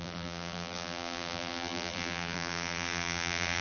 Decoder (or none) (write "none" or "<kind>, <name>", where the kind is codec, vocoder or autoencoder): vocoder, BigVGAN v2